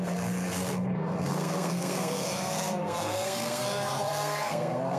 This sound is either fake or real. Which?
fake